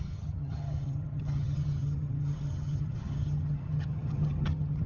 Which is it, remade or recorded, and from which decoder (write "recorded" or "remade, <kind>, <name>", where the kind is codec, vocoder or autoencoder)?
remade, vocoder, HiFi-GAN